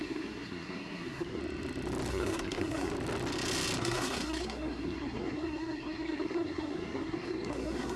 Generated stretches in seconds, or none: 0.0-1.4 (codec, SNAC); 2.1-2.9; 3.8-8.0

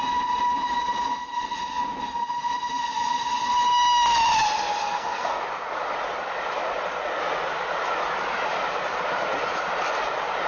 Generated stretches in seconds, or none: 4.8-5.4 (codec, SNAC)

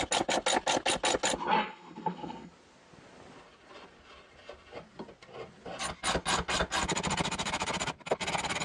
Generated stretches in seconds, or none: 1.6-2.5 (codec, SNAC)

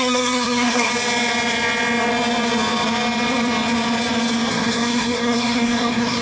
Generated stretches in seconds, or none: 0.0-0.9 (codec, SNAC); 4.5-6.2

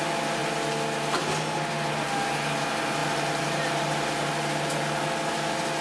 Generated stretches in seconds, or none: none

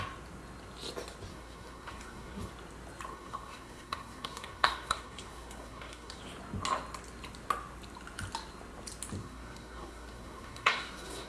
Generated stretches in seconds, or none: 1.3-2.5 (codec, SNAC); 3.1-6.2; 9.2-11.3

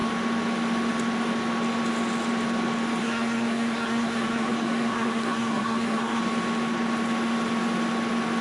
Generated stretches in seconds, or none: 3.0-6.2 (codec, SNAC)

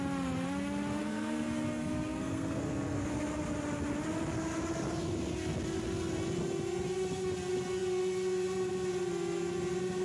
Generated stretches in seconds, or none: 1.0-3.1 (codec, SNAC)